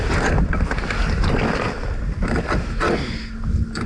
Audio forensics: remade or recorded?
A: recorded